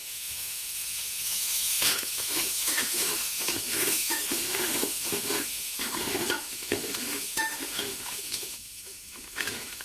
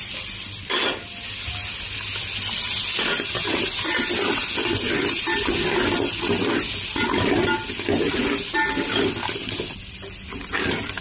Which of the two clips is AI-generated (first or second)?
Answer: first